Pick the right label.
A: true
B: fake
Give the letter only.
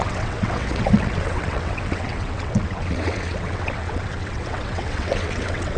B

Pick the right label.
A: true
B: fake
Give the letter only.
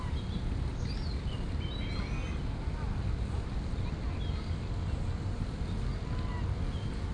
A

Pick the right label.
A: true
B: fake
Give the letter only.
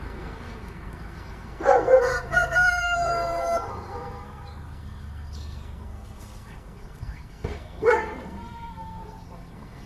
B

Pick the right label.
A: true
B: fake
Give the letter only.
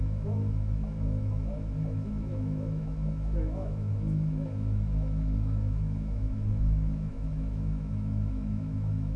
B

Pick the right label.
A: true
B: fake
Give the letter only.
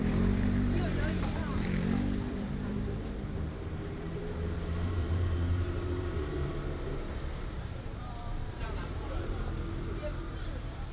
B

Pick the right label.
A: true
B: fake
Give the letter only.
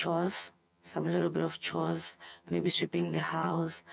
B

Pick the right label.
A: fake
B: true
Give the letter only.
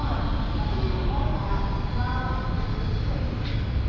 B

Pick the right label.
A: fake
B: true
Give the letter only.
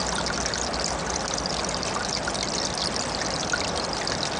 B